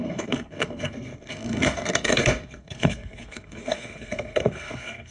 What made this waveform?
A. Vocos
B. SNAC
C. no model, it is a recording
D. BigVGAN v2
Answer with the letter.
B